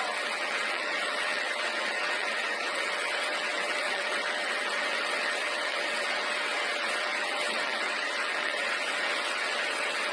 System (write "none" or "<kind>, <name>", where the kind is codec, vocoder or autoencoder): vocoder, WaveNeXt